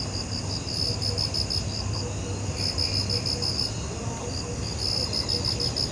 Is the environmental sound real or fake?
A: real